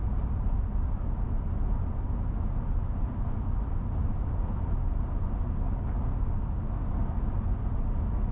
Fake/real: real